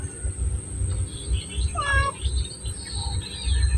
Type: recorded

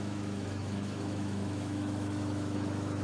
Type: remade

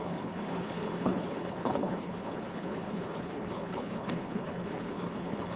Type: remade